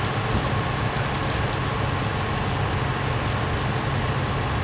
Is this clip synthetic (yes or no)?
no